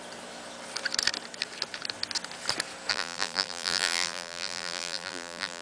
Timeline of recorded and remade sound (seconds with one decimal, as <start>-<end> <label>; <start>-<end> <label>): 0.0-2.9 recorded; 2.9-5.6 remade